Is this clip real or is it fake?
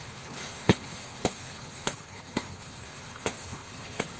fake